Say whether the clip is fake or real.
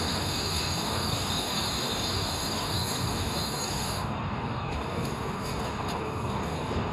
fake